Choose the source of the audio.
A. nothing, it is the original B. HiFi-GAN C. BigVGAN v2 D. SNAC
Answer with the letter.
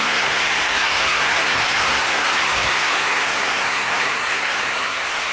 D